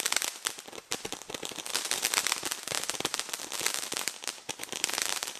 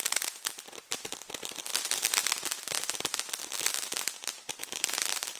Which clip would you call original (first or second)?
second